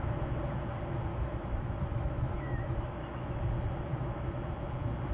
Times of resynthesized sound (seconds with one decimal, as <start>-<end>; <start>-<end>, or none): 1.1-3.4; 3.9-4.4